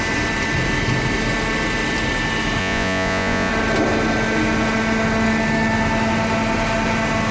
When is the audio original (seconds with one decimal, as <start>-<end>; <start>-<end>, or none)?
0.0-2.6; 3.5-7.3